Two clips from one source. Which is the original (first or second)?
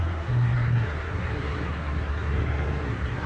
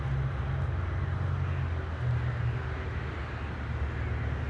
second